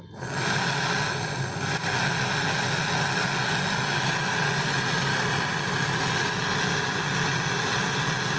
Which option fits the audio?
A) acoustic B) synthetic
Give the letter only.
A